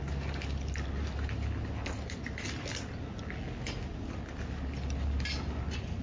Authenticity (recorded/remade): recorded